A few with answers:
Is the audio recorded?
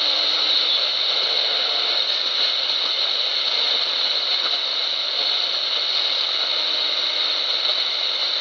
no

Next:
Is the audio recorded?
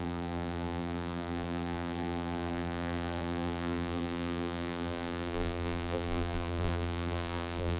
no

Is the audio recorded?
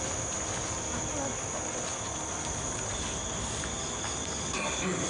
yes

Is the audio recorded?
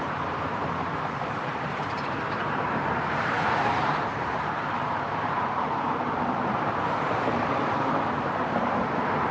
no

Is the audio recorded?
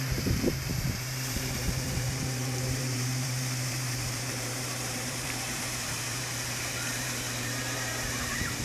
no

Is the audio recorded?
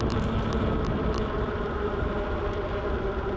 no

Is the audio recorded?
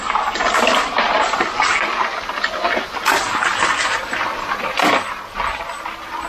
yes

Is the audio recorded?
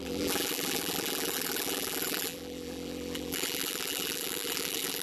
no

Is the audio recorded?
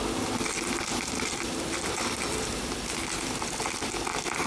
yes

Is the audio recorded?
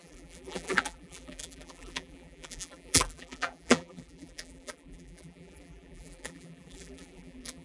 no